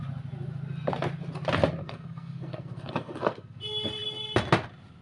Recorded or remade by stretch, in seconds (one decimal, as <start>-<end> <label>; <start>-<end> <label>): 0.0-1.8 recorded; 1.8-3.6 remade; 3.6-5.0 recorded